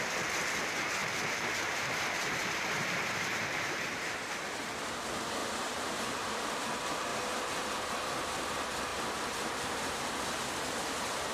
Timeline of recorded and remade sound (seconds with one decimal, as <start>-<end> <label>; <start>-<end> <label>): 0.0-1.0 recorded; 1.0-4.4 remade; 4.4-5.4 recorded; 5.4-6.6 remade; 6.6-7.1 recorded; 7.1-7.7 remade; 7.7-8.9 recorded; 8.9-10.1 remade; 10.1-11.3 recorded